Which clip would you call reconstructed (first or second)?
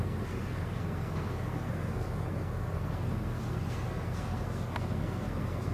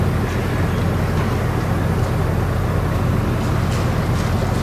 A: first